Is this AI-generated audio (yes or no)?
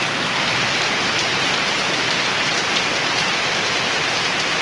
yes